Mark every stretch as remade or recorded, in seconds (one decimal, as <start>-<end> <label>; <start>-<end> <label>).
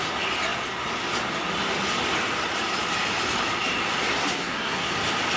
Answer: 0.0-4.2 recorded; 4.2-4.9 remade; 4.9-5.4 recorded